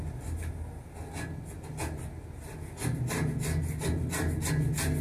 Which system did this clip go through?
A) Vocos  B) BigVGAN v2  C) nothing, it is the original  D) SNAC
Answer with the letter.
C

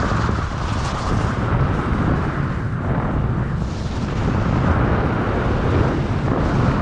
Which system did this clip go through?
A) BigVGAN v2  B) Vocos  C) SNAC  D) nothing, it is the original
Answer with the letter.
D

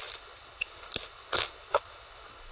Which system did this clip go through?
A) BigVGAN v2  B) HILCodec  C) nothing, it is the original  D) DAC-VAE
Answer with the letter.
B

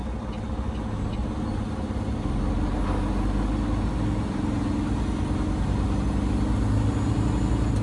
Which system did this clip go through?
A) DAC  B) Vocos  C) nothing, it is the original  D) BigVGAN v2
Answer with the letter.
C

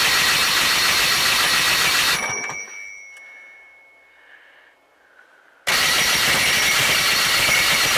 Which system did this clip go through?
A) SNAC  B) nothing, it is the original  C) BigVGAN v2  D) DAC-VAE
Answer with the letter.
B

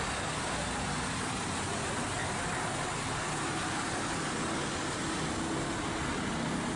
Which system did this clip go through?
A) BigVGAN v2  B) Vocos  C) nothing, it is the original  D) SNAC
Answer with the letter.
C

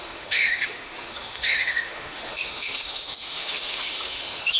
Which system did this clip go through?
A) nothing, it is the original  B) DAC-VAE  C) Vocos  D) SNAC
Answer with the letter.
B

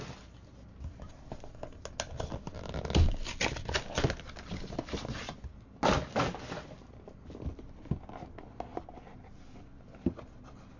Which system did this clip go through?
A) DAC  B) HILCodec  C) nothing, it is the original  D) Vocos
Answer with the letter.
C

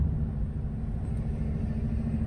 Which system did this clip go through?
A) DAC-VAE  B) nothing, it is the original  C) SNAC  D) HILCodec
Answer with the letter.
B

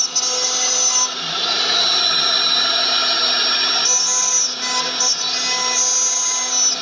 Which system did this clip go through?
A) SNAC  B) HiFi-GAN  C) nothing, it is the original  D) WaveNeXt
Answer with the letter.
C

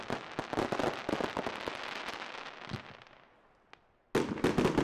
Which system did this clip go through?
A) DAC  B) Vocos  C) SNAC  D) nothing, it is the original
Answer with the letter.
D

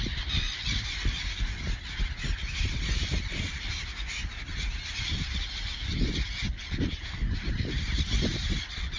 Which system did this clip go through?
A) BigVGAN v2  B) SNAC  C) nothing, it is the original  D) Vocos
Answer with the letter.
C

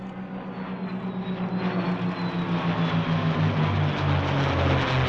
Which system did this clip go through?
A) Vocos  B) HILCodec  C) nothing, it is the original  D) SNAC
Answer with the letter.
C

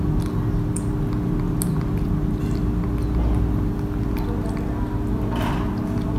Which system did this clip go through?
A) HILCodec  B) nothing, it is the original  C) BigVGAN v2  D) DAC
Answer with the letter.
B